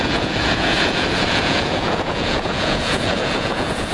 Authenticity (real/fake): fake